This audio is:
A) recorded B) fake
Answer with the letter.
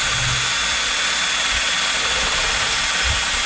A